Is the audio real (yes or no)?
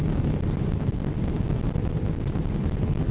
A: yes